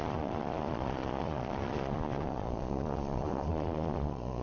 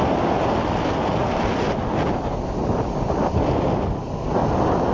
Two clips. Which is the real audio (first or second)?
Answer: second